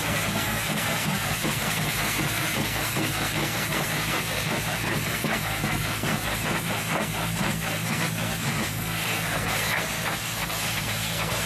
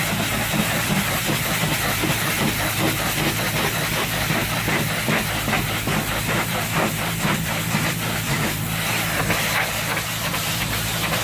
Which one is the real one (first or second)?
second